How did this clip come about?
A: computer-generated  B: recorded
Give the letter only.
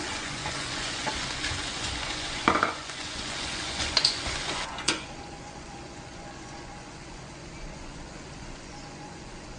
A